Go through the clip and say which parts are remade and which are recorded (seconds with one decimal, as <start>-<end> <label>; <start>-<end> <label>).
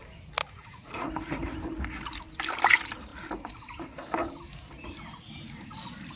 0.0-0.4 recorded; 0.4-1.1 remade; 1.1-6.2 recorded